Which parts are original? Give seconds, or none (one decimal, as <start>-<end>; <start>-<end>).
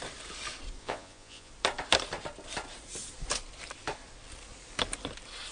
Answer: 0.0-0.8; 1.5-5.5